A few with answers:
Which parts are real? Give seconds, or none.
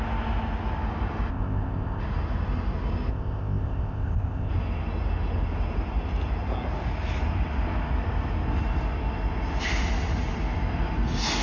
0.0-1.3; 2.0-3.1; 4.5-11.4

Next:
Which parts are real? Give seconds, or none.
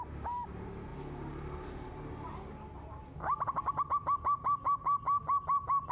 0.0-5.9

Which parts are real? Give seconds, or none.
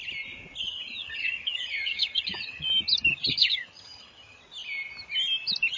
0.0-0.6; 2.7-3.1; 4.4-5.8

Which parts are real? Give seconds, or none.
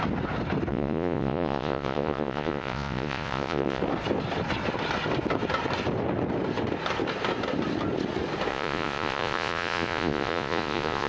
0.0-0.7; 3.8-8.5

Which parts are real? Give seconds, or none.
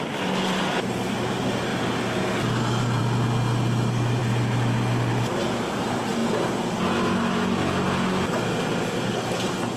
0.0-9.8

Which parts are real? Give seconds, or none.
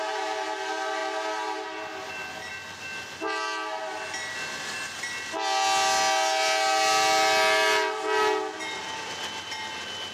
0.0-10.1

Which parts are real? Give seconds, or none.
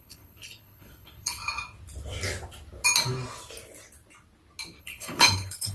1.4-4.8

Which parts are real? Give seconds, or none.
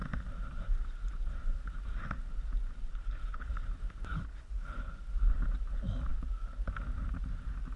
0.0-2.9; 3.5-4.1; 4.9-7.8